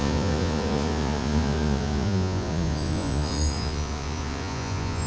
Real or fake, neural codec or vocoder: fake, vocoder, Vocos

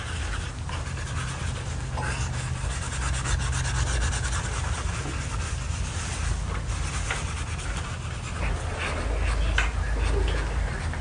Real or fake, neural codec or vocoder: real